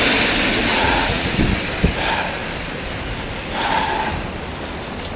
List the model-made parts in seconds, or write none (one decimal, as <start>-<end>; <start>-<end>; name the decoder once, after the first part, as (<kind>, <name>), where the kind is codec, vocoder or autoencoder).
0.7-1.3 (vocoder, Vocos)